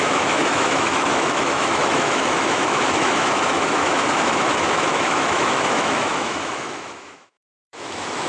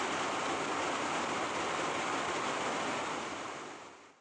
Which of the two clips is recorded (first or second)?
second